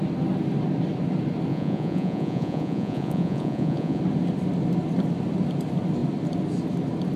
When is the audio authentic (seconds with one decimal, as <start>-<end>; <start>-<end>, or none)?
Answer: 0.0-1.5; 4.0-7.2